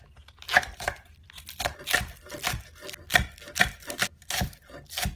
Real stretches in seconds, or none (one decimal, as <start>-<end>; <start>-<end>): 0.0-5.2